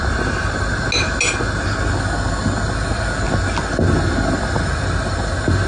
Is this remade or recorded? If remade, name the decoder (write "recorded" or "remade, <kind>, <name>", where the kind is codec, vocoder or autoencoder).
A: recorded